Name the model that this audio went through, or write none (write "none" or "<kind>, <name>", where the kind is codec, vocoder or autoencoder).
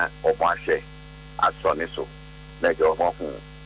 none